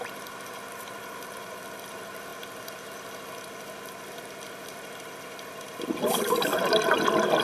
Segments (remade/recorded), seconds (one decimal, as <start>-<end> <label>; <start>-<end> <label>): 0.0-7.4 recorded

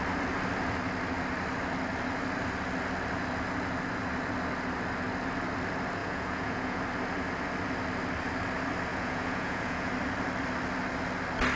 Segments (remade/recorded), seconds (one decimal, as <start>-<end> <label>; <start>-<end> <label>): 0.0-6.0 recorded; 6.0-6.8 remade; 6.8-8.9 recorded; 8.9-9.9 remade; 9.9-11.6 recorded

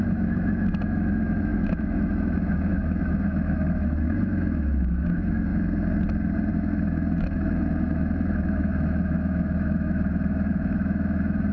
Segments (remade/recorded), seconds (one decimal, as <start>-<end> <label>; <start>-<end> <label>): 0.0-5.5 remade; 5.5-6.5 recorded; 6.5-11.5 remade